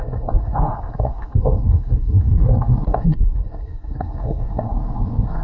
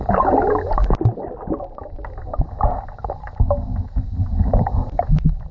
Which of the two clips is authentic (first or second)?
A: second